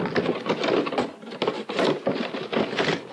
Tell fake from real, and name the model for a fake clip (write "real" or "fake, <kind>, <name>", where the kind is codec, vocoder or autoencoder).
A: real